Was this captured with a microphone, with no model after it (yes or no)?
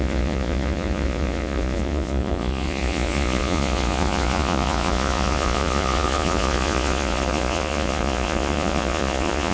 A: no